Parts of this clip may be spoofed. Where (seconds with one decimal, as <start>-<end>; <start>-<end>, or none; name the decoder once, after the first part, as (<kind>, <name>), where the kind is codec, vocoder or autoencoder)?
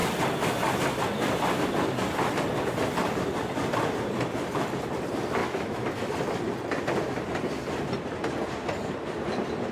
5.4-6.1 (autoencoder, DAC-VAE)